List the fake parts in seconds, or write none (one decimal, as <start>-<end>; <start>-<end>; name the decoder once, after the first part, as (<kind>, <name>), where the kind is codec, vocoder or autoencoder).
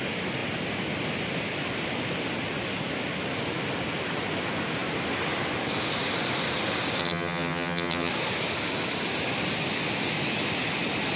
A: 7.0-8.1 (vocoder, HiFi-GAN)